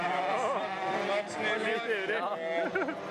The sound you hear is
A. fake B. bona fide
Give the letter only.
B